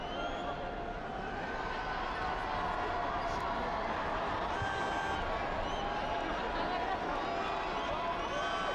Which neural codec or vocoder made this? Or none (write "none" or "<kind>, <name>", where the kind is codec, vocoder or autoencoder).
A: none